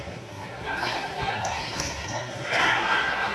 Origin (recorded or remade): remade